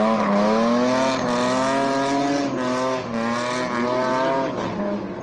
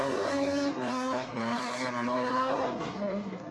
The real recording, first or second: first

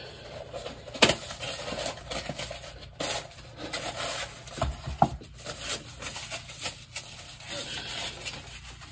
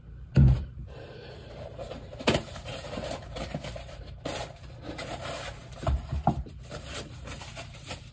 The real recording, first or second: first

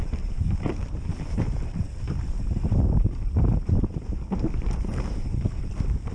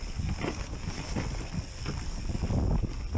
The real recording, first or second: second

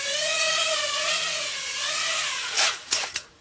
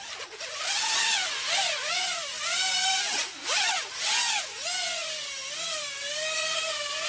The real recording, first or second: second